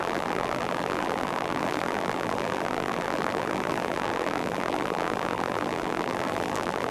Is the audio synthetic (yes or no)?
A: yes